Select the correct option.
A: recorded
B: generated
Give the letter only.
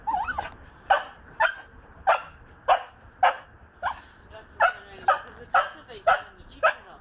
A